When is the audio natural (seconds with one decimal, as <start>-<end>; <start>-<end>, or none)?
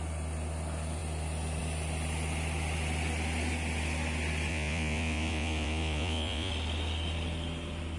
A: 0.0-4.5; 6.5-8.0